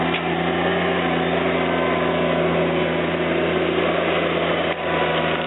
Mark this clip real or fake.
real